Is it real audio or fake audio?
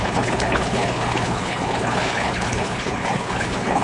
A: fake